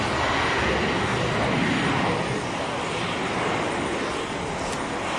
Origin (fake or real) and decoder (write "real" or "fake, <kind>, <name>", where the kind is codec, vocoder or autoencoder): real